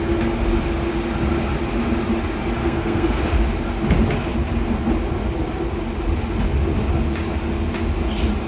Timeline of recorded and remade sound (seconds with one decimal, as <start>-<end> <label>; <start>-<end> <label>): 0.0-2.6 recorded; 2.6-3.2 remade; 3.2-8.5 recorded